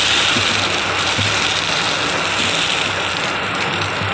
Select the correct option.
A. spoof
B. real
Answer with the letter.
B